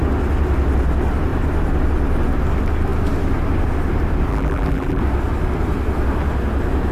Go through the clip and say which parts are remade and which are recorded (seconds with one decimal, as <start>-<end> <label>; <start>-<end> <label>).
0.0-4.3 recorded; 4.3-5.0 remade; 5.0-6.9 recorded